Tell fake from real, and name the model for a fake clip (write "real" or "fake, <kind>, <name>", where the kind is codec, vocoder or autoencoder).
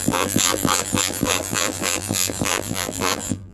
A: fake, vocoder, BigVGAN v2